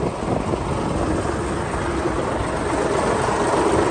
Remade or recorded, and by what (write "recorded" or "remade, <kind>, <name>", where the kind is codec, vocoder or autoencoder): recorded